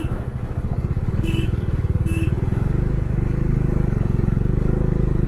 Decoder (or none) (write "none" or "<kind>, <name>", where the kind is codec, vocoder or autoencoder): codec, DAC